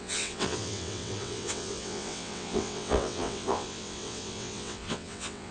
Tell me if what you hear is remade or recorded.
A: remade